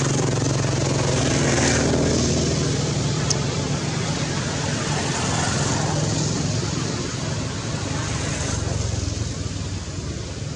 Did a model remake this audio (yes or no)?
no